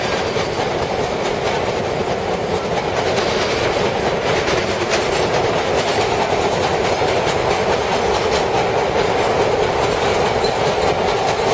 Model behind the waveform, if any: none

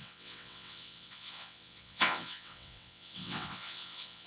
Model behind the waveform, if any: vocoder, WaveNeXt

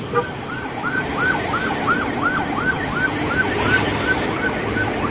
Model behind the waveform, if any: none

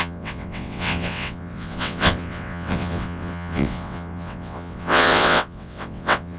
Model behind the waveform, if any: vocoder, WaveNeXt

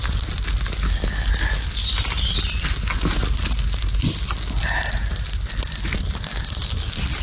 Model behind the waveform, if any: none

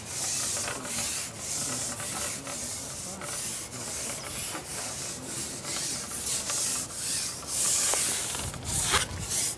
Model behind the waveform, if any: none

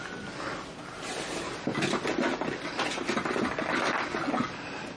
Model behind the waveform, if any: none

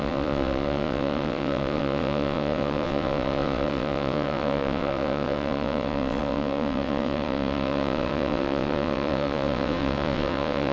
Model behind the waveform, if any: vocoder, WaveNeXt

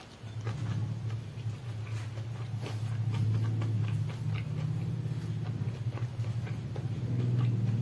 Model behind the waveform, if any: none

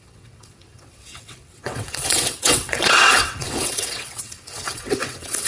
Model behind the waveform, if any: vocoder, WaveNeXt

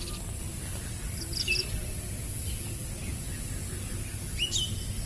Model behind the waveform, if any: none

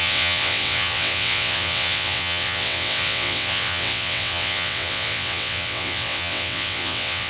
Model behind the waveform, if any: vocoder, WaveNeXt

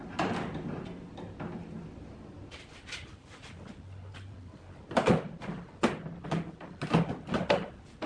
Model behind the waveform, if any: none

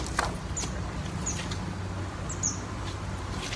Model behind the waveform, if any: none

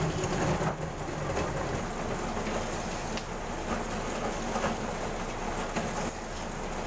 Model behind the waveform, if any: none